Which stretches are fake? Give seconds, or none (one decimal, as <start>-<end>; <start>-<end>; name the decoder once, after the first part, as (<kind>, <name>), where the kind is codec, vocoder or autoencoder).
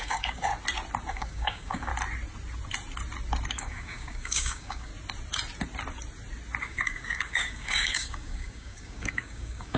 0.0-0.5 (codec, DAC); 1.1-1.9; 3.5-4.9; 6.6-9.8